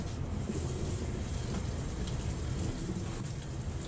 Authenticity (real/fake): real